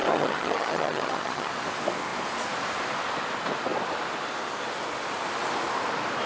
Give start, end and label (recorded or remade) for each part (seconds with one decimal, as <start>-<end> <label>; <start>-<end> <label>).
0.0-1.5 remade; 1.5-6.3 recorded